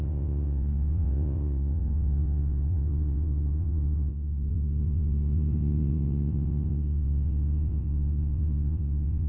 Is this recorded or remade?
remade